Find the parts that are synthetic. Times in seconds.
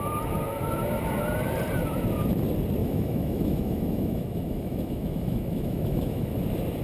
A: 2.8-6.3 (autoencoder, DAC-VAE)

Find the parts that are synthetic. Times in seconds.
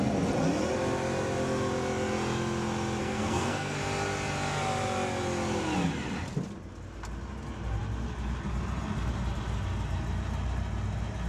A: 3.0-3.8 (codec, SNAC)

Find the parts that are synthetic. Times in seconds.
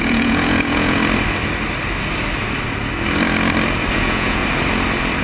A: 0.0-1.0 (vocoder, Vocos); 3.9-4.4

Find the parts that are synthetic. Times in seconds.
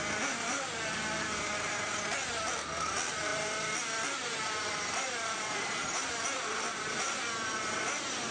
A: none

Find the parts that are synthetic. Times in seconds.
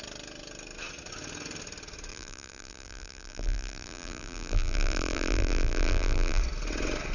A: 2.1-6.4 (vocoder, BigVGAN v2)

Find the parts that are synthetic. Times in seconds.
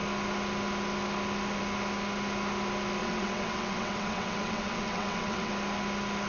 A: 3.0-5.5 (vocoder, WaveNeXt)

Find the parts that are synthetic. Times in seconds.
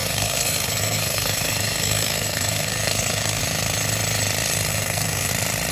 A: 0.0-3.4 (codec, SNAC); 4.7-5.3